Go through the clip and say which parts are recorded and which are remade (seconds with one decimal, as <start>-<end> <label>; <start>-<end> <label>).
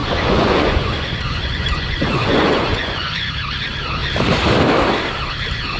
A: 0.0-3.3 remade; 3.3-5.8 recorded